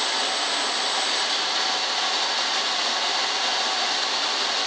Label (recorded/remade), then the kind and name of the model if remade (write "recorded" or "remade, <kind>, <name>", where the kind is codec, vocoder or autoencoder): recorded